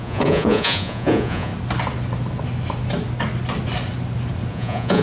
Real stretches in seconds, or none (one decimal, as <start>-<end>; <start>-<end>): 1.5-4.5